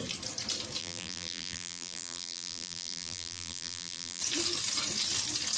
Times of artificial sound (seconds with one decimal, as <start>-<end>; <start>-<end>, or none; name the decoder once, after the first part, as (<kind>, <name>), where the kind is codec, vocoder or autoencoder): 0.8-4.2 (vocoder, BigVGAN v2)